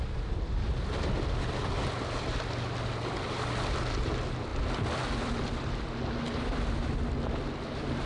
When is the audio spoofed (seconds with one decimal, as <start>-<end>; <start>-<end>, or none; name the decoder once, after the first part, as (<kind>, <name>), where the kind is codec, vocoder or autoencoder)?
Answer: none